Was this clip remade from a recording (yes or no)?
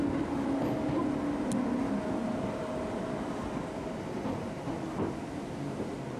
no